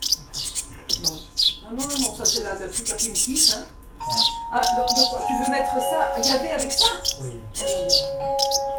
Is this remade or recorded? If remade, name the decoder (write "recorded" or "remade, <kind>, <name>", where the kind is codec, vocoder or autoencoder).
remade, codec, DAC